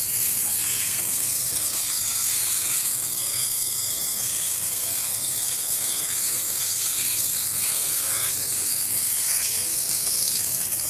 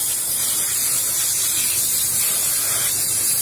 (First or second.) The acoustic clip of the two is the second